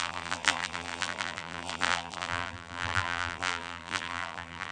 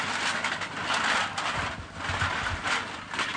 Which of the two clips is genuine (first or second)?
second